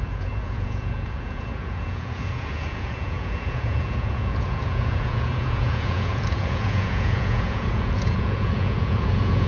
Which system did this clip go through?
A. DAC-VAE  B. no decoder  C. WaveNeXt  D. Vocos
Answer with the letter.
D